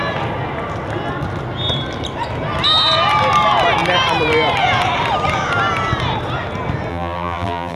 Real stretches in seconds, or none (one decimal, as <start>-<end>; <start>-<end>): 0.0-6.9